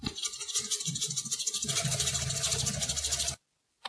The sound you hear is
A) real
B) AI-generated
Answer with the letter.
A